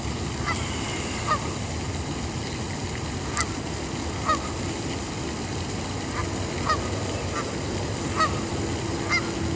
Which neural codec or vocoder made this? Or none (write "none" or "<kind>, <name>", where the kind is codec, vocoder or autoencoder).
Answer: none